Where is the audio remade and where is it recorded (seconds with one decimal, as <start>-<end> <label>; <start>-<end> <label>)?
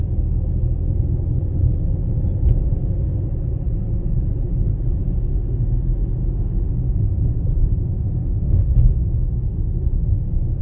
0.0-5.3 recorded; 5.3-6.7 remade; 6.7-7.6 recorded; 7.6-10.6 remade